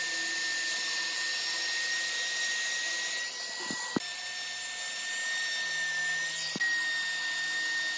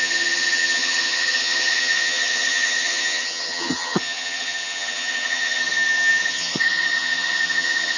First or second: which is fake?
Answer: second